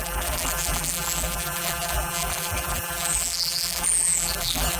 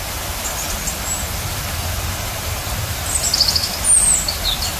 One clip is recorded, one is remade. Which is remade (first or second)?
first